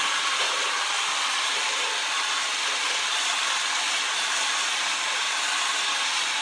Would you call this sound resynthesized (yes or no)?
yes